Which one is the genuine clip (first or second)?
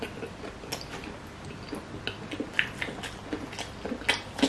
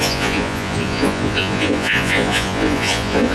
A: first